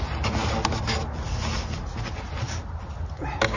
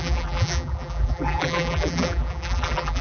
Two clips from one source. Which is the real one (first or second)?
first